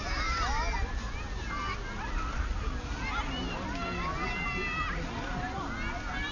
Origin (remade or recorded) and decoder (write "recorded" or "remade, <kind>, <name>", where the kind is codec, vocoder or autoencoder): recorded